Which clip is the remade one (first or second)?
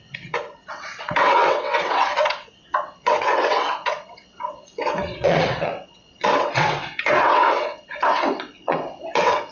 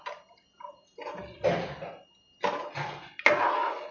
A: first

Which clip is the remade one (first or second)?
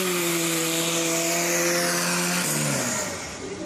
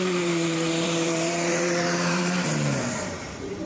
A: second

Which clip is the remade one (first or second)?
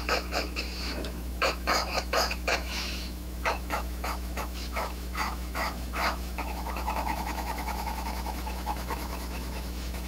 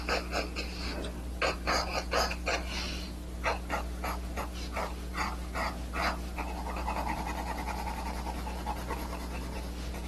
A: first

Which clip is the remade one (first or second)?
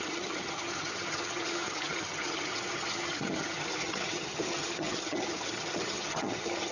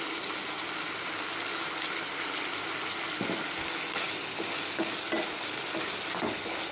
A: first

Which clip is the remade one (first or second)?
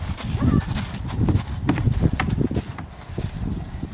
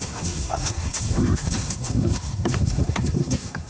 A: second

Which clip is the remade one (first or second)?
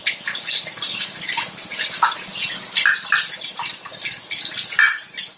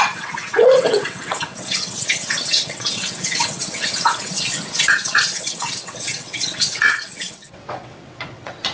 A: second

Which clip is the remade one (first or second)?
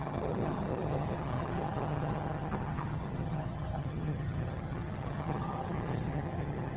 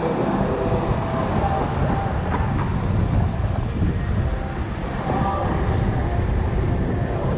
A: first